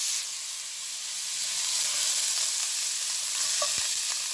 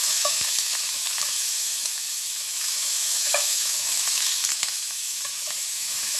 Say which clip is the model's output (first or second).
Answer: second